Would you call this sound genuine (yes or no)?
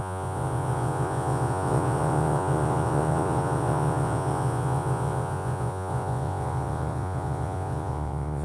no